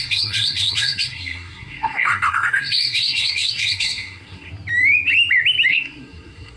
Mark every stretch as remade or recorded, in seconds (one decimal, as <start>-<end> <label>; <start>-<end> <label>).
0.0-4.5 remade; 4.5-5.7 recorded; 5.7-6.6 remade